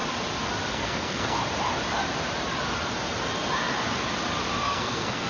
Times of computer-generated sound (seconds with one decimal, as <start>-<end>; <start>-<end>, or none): 0.7-1.4; 4.6-5.3